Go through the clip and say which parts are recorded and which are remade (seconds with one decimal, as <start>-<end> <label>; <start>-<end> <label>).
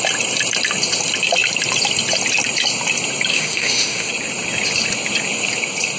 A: 0.0-3.3 recorded; 3.3-4.1 remade; 4.1-6.0 recorded